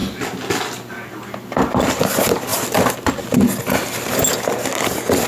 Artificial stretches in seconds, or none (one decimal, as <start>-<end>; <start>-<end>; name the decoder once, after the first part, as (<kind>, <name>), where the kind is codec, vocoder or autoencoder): none